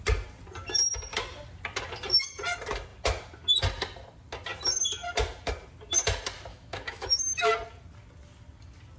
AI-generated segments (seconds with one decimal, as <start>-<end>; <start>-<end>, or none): 6.5-7.5